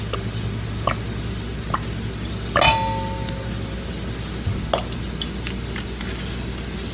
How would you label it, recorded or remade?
recorded